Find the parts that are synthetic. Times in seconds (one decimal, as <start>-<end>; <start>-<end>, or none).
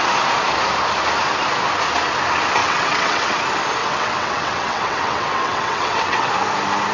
2.6-3.4; 3.8-6.3